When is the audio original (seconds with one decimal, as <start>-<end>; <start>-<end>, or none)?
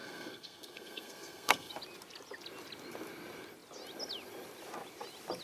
1.7-5.4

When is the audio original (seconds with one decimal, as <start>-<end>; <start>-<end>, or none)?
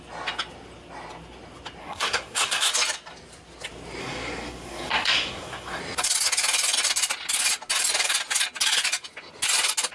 0.0-1.8; 2.7-4.0; 5.8-9.9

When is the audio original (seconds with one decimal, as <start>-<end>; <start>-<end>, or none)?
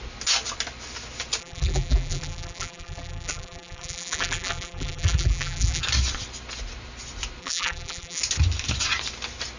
0.0-1.4; 5.8-7.4; 8.2-9.6